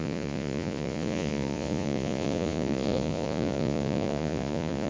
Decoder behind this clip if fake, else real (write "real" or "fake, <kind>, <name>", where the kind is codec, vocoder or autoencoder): fake, vocoder, Vocos